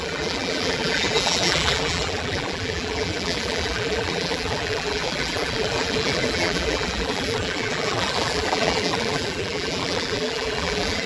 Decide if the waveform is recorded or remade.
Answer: remade